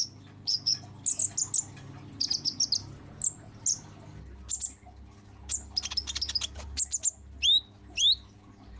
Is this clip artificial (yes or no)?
no